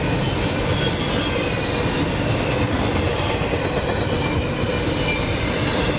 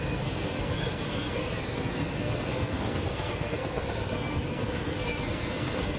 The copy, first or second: second